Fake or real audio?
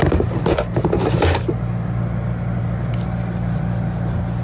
real